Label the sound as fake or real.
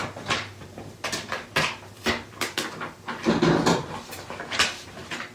fake